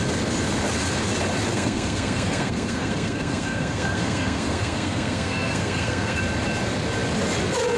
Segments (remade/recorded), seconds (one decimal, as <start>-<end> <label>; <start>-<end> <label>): 0.0-1.5 recorded; 1.5-6.2 remade; 6.2-7.8 recorded